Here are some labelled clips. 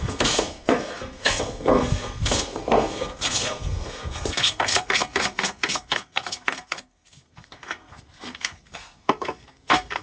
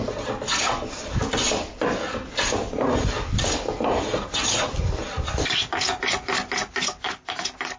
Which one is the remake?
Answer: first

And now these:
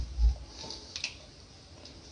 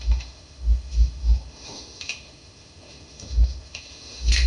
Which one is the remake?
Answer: second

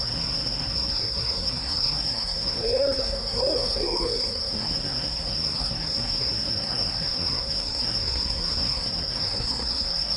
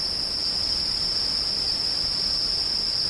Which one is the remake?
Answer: first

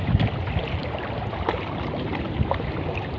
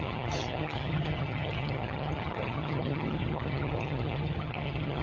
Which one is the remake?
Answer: second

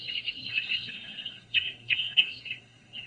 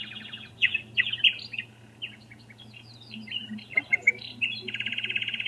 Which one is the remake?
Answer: first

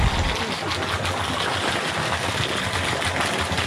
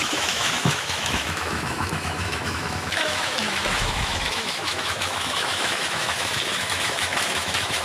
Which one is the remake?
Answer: second